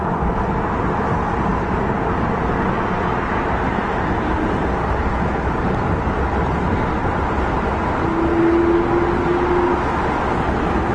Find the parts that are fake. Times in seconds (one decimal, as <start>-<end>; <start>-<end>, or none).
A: 3.7-5.0; 7.0-7.7